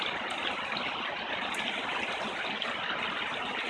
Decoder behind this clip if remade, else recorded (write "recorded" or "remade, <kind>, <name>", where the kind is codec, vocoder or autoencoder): recorded